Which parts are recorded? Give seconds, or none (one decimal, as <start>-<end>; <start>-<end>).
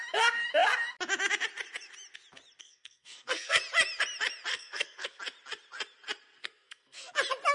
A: 0.0-2.6; 3.6-4.5; 5.2-6.4; 7.1-7.5